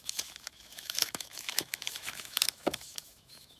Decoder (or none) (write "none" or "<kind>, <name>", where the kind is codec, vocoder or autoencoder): autoencoder, DAC-VAE